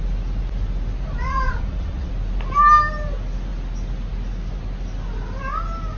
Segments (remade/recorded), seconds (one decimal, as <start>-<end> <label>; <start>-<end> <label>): 0.0-1.2 recorded; 1.2-2.1 remade; 2.1-6.0 recorded